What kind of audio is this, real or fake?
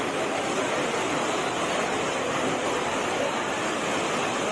real